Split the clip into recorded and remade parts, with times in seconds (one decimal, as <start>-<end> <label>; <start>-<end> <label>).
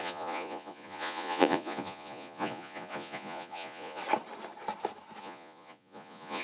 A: 0.0-4.0 remade; 4.0-5.2 recorded; 5.2-6.4 remade